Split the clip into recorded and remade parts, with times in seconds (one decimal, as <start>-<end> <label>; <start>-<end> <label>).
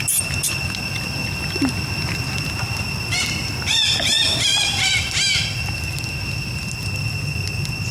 0.0-4.3 recorded; 4.3-4.8 remade; 4.8-7.9 recorded